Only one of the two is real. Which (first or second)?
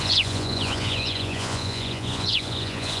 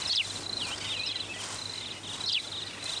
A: second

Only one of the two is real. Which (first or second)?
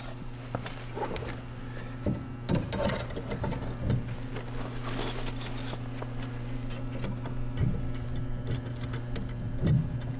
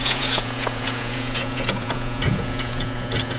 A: first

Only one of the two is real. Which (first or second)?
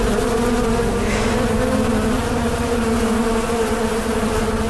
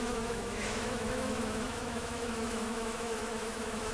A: first